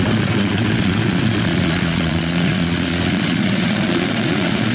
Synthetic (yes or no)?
yes